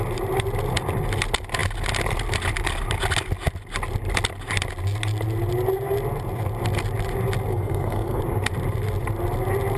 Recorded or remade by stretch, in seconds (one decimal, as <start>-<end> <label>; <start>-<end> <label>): 0.0-7.5 recorded; 7.5-8.2 remade; 8.2-9.8 recorded